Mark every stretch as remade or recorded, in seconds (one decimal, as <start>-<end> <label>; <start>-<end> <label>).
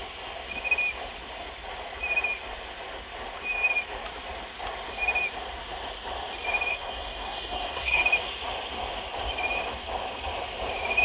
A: 0.0-6.7 recorded; 6.7-8.0 remade; 8.0-11.0 recorded